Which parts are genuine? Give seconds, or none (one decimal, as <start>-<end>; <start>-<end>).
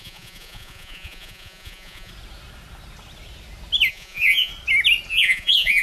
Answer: 2.1-3.9; 4.5-5.1